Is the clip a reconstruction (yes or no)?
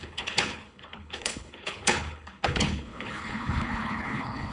yes